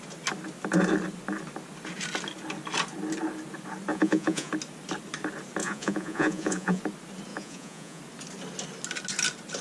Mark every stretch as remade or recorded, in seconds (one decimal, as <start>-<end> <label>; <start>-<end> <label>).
0.0-3.9 recorded; 3.9-4.5 remade; 4.5-5.6 recorded; 5.6-6.8 remade; 6.8-7.3 recorded; 7.3-8.0 remade; 8.0-9.6 recorded